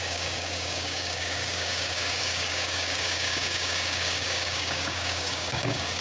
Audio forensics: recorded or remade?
remade